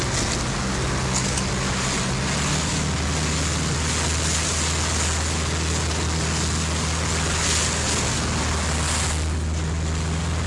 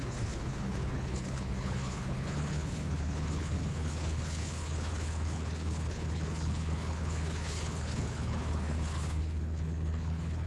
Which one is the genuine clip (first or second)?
first